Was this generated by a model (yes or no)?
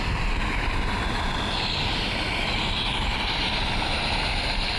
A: no